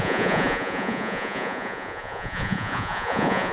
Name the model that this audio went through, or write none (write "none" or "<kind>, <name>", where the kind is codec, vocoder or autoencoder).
vocoder, Vocos